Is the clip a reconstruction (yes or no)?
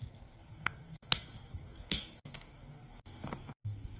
yes